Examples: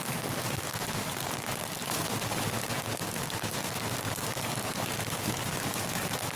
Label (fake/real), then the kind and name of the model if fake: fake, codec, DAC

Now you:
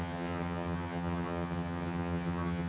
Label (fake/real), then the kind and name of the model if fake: fake, vocoder, HiFi-GAN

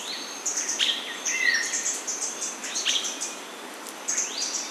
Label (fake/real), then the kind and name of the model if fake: real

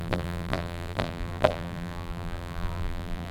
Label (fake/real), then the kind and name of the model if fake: fake, vocoder, BigVGAN v2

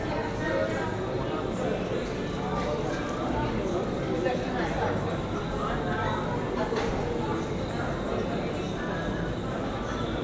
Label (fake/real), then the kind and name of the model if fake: real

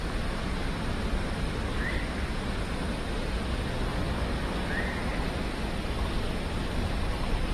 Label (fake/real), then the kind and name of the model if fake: real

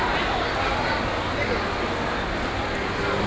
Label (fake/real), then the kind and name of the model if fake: real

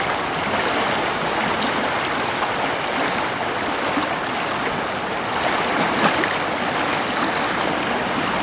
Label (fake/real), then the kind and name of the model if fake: real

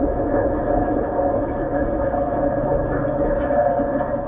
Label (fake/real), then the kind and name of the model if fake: real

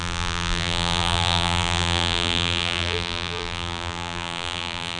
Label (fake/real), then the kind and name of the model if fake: fake, vocoder, BigVGAN v2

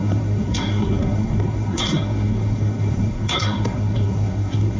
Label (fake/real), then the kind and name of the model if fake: fake, codec, SNAC